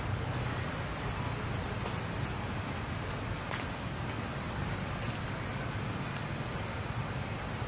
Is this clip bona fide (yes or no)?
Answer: yes